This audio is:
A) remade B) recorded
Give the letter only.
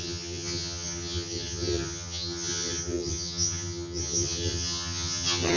A